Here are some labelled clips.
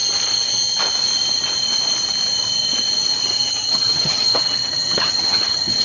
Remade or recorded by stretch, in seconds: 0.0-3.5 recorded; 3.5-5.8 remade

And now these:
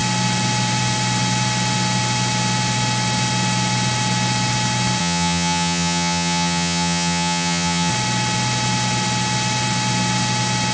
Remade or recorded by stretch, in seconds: 0.0-5.0 recorded; 5.0-7.9 remade; 7.9-10.7 recorded

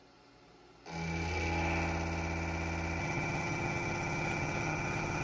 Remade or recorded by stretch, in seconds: 0.0-3.0 recorded; 3.0-5.2 remade

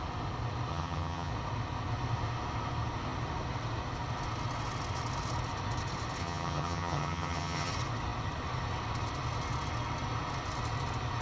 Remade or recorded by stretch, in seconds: 0.0-0.7 recorded; 0.7-1.3 remade; 1.3-6.2 recorded; 6.2-7.7 remade; 7.7-11.2 recorded

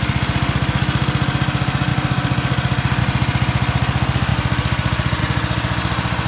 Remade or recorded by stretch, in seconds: 0.0-6.3 recorded